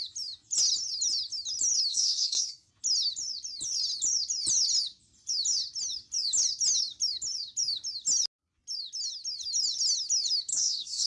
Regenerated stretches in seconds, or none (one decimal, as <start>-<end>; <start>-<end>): 1.9-2.7; 10.5-11.1